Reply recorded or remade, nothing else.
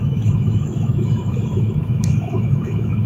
remade